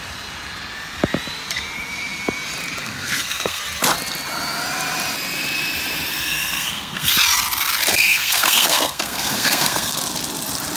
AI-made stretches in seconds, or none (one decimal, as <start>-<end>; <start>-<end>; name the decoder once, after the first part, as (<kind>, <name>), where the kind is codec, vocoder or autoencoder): 2.8-3.6 (codec, SNAC); 6.1-7.1; 7.9-10.0